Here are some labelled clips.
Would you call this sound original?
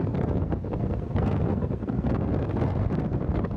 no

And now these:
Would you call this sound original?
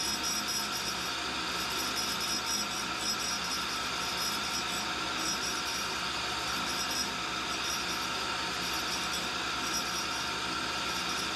yes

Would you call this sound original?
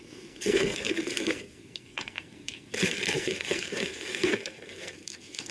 no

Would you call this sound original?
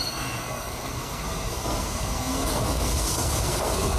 no